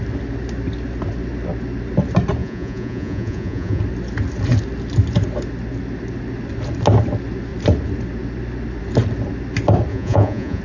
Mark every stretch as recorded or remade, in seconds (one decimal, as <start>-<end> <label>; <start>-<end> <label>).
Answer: 0.0-2.4 recorded; 2.4-3.8 remade; 3.8-9.9 recorded; 9.9-10.6 remade